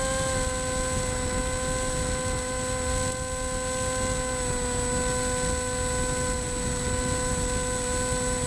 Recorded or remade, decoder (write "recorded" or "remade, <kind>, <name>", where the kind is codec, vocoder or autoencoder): recorded